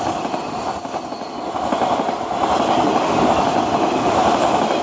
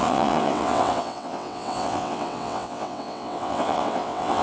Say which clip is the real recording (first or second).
first